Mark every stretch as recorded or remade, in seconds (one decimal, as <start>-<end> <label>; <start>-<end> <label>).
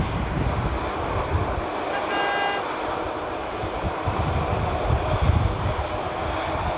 0.0-1.7 remade; 1.7-3.6 recorded; 3.6-6.8 remade